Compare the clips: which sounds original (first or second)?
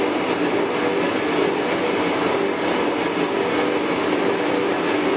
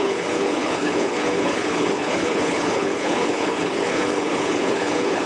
first